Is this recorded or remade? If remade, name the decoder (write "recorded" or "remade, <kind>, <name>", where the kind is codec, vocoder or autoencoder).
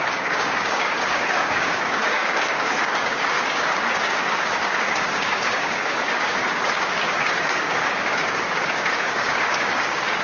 remade, codec, DAC